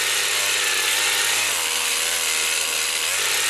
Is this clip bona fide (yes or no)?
yes